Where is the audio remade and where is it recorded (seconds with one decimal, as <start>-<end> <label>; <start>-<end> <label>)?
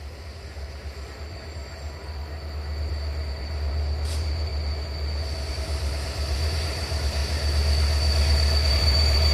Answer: 0.0-1.6 remade; 1.6-2.9 recorded; 2.9-4.5 remade; 4.5-5.5 recorded; 5.5-7.2 remade; 7.2-8.7 recorded; 8.7-9.3 remade